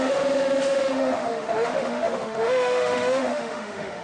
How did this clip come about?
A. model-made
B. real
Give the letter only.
A